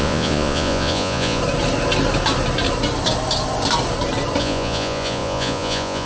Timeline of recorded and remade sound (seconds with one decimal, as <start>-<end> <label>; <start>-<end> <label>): 0.0-1.4 remade; 1.4-4.4 recorded; 4.4-6.1 remade